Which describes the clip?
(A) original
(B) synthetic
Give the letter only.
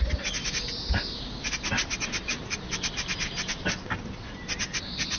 A